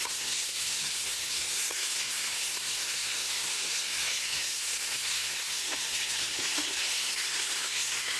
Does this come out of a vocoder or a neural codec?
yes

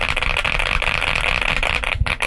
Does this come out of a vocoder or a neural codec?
no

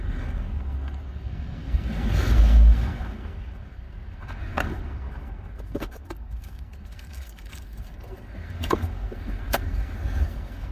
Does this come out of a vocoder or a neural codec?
yes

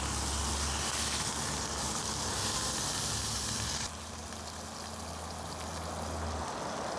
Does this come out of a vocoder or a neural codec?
no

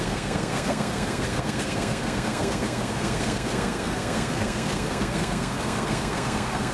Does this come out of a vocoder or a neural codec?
yes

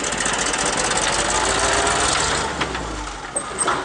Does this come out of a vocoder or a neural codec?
no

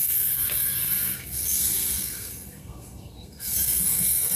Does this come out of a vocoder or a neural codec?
yes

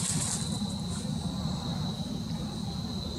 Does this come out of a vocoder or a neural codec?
no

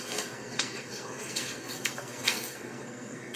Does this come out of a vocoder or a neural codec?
yes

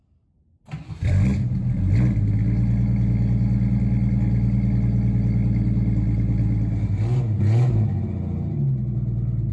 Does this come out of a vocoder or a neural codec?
no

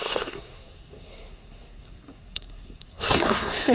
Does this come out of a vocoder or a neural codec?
yes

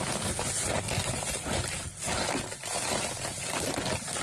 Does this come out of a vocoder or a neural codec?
no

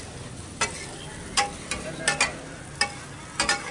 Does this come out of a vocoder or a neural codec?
no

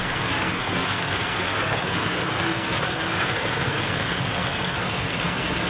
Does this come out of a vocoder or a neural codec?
yes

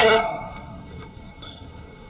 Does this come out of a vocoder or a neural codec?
yes